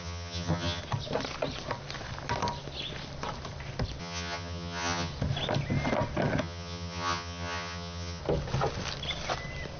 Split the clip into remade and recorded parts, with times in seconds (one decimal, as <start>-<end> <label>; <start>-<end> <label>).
0.0-0.8 remade; 0.8-4.0 recorded; 4.0-5.1 remade; 5.1-6.4 recorded; 6.4-8.2 remade; 8.2-9.8 recorded